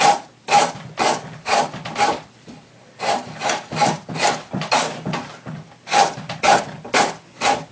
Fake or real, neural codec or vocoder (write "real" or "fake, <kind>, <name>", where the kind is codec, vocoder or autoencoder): real